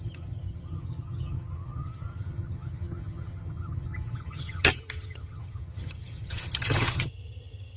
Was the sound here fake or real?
fake